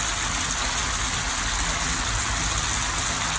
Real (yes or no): yes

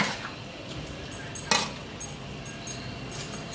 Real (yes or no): yes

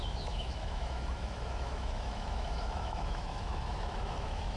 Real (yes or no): no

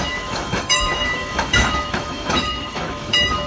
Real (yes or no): no